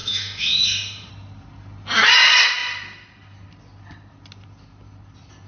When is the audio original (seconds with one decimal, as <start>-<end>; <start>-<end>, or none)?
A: 1.1-5.5